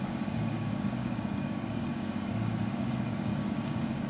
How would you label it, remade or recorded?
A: remade